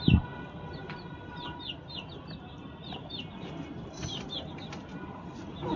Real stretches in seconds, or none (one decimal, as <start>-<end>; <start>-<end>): 0.0-5.8